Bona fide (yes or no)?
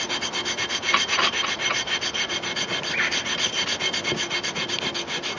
yes